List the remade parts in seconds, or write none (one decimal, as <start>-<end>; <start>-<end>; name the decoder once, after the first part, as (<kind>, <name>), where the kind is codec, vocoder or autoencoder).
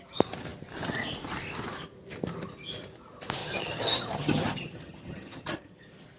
3.4-5.8 (vocoder, HiFi-GAN)